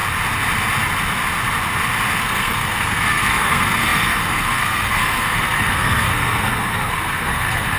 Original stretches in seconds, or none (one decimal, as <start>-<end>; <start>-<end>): 0.0-2.2